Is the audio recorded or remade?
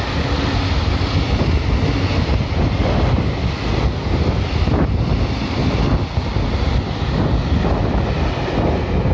recorded